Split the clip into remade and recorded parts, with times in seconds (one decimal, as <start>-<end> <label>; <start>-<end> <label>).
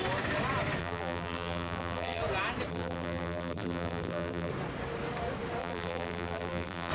0.0-0.8 recorded; 0.8-2.2 remade; 2.2-2.7 recorded; 2.7-4.5 remade; 4.5-5.6 recorded; 5.6-6.9 remade